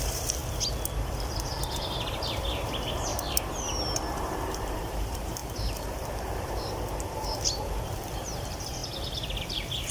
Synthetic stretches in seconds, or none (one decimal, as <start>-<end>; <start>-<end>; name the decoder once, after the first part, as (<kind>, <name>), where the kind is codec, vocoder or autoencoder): 0.0-0.4 (vocoder, BigVGAN v2); 2.0-3.1; 4.1-8.8; 9.4-9.9